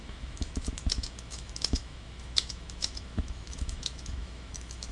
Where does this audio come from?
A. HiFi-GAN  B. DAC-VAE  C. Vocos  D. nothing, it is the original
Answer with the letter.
B